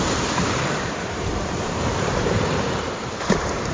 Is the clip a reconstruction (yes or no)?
yes